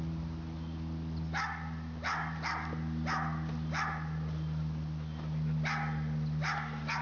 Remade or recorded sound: recorded